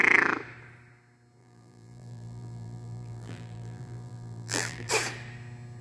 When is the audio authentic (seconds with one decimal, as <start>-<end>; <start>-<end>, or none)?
0.0-1.4; 4.9-5.8